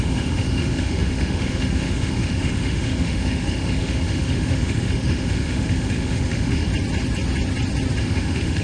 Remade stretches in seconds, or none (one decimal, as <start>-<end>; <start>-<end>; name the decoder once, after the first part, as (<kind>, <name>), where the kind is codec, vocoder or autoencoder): 0.0-6.7 (autoencoder, DAC-VAE); 8.0-8.6